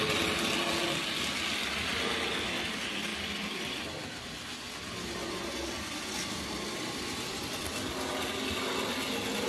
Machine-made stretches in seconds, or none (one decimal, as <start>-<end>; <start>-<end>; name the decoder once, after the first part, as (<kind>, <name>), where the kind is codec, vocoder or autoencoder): 3.1-4.3 (vocoder, BigVGAN v2)